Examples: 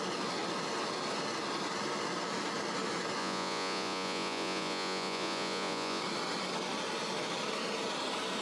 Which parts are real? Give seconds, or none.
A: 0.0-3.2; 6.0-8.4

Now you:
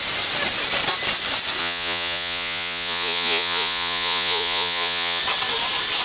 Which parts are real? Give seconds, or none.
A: 0.0-1.6; 5.2-6.0

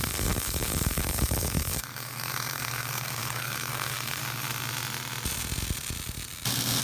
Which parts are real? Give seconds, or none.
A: 4.2-6.8

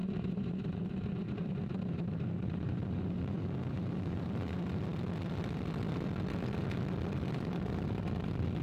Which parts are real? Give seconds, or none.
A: 4.7-8.6

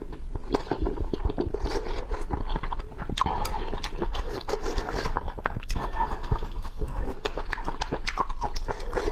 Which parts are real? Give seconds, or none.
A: 0.0-4.0; 7.4-9.1

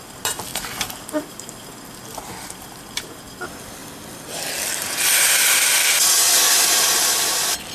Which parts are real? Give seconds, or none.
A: 0.0-7.7